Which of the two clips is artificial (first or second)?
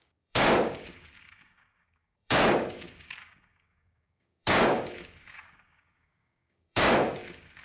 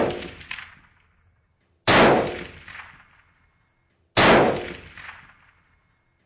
first